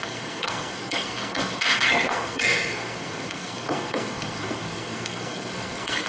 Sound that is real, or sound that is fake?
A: fake